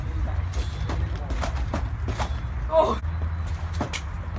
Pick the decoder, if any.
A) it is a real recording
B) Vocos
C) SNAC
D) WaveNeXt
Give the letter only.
A